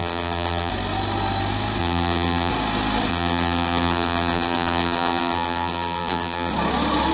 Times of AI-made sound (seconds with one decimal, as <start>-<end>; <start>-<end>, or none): 0.0-0.7; 1.8-2.5; 3.1-6.5